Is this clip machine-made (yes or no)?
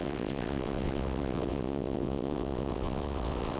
yes